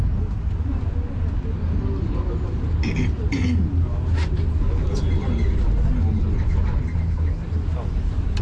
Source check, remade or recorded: recorded